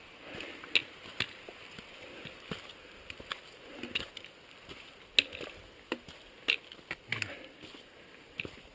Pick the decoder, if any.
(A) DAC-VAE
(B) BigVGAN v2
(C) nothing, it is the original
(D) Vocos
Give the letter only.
C